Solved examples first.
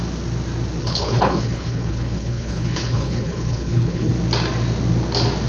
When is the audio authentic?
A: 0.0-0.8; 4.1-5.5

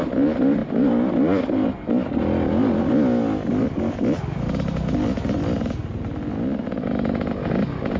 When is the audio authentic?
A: 0.0-8.0

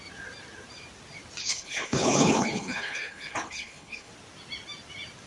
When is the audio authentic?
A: 0.0-1.4; 4.1-5.3

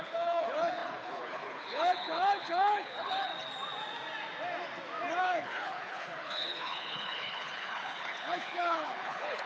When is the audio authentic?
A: 3.3-5.2

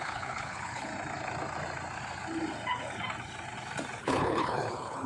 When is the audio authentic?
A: 0.9-4.0